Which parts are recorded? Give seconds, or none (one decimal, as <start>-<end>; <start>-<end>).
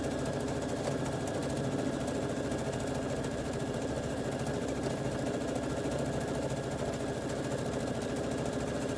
0.0-9.0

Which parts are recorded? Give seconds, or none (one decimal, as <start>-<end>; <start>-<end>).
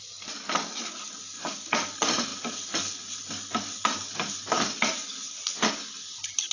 0.0-6.5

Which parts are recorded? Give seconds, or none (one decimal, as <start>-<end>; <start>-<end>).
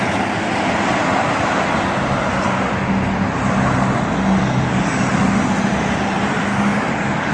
0.0-4.4; 5.1-6.5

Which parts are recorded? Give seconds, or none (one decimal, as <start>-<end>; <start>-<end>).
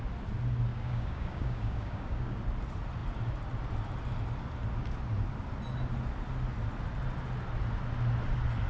0.0-0.7; 2.4-8.7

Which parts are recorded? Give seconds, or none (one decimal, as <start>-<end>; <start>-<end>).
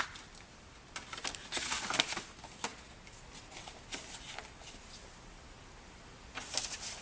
0.0-7.0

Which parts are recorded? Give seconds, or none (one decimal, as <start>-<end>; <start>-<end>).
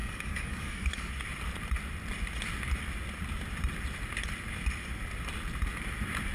1.1-6.3